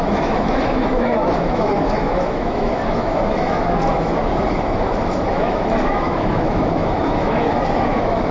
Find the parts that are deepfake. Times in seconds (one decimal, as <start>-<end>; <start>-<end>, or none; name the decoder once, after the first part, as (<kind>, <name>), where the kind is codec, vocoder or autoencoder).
0.0-8.3 (autoencoder, DAC-VAE)